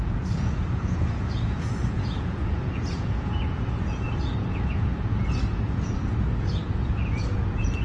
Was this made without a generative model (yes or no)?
no